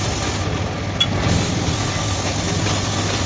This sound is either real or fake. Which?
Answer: real